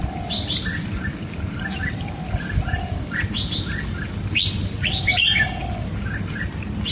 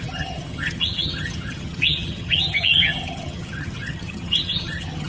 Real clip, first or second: first